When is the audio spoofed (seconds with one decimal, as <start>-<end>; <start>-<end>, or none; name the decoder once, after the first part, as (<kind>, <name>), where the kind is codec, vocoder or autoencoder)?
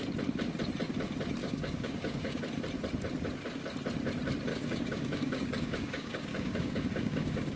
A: 1.4-2.4 (codec, DAC); 4.5-7.6